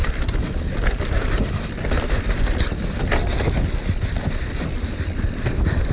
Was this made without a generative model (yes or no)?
yes